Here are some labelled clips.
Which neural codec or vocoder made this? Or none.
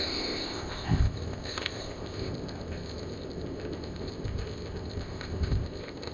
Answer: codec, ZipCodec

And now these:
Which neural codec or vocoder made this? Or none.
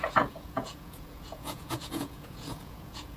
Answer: vocoder, Vocos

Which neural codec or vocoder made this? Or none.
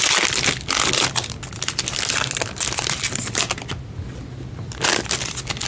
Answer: none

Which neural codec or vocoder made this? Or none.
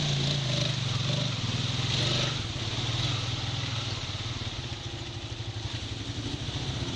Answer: none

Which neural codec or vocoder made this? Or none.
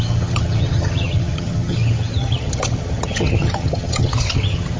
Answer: vocoder, HiFi-GAN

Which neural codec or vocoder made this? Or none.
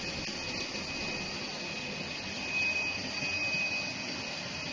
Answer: none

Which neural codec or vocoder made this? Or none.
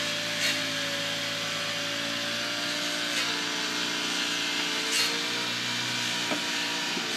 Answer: none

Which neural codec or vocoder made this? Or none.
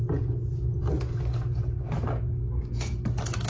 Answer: none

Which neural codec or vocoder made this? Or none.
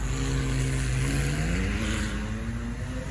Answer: none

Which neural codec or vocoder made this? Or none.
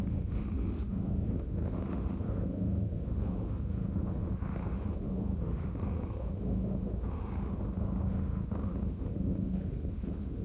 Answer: autoencoder, DAC-VAE